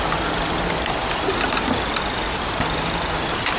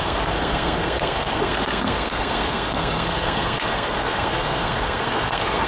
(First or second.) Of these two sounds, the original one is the first